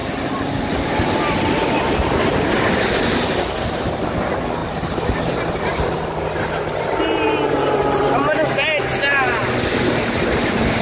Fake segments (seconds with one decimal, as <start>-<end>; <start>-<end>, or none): none